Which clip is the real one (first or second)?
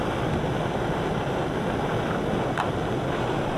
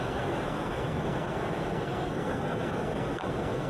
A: first